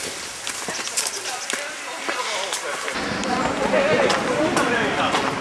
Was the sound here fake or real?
real